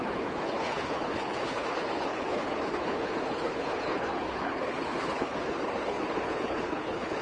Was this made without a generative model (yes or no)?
no